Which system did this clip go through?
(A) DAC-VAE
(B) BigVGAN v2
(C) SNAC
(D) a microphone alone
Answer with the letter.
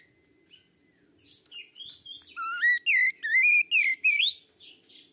D